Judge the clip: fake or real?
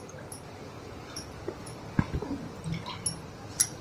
real